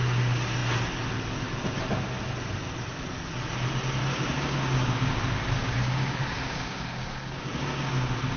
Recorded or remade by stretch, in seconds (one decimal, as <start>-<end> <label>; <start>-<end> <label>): 0.0-4.0 recorded; 4.0-7.9 remade; 7.9-8.4 recorded